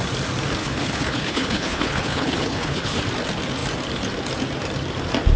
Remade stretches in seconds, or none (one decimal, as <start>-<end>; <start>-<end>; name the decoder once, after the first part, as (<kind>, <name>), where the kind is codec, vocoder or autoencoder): 0.6-3.0 (codec, HILCodec)